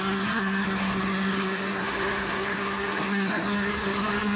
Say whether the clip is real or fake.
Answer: fake